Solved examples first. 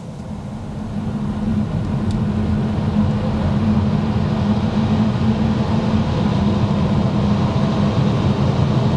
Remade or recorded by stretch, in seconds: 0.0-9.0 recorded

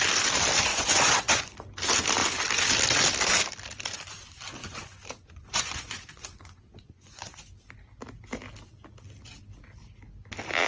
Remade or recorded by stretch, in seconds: 0.0-0.7 recorded; 0.7-1.5 remade; 1.5-4.6 recorded; 4.6-7.6 remade; 7.6-10.7 recorded

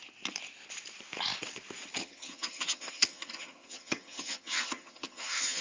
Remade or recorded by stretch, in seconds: 0.0-2.0 recorded; 2.0-5.6 remade